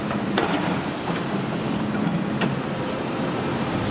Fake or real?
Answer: fake